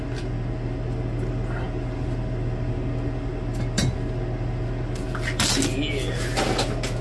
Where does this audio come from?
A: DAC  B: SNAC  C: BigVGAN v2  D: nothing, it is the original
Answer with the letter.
D